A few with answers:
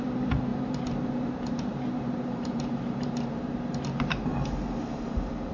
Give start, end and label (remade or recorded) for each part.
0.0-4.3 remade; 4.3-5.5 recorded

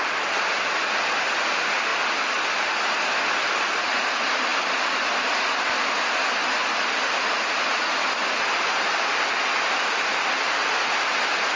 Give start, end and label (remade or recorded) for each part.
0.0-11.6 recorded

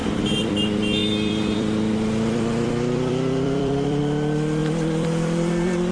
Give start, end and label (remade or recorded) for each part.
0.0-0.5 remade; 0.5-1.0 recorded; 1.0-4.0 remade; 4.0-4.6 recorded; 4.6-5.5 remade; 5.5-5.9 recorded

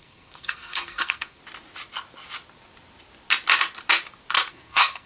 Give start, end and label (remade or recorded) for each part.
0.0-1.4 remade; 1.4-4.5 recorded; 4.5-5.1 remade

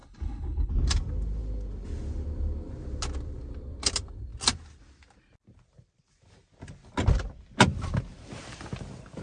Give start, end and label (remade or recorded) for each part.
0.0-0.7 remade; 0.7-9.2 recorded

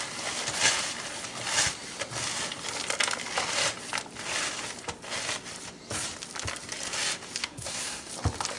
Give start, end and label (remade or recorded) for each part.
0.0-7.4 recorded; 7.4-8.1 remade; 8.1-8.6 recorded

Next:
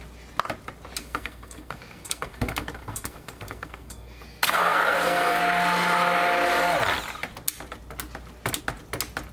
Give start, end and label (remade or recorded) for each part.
0.0-1.0 recorded; 1.0-5.4 remade; 5.4-9.3 recorded

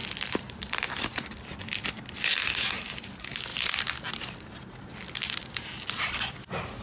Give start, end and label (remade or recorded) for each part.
0.0-1.6 remade; 1.6-3.5 recorded; 3.5-6.0 remade; 6.0-6.8 recorded